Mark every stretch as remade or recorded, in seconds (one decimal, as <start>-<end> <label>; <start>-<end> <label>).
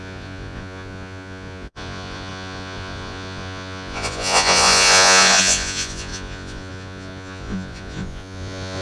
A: 0.0-8.8 remade